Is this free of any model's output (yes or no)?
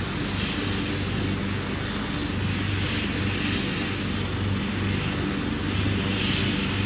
yes